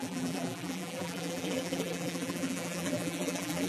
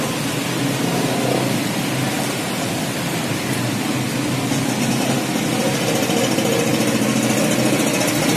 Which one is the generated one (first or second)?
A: first